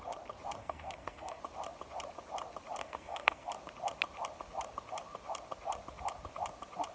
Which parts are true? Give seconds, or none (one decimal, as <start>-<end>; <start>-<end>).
0.0-0.6; 1.4-2.8; 3.5-6.9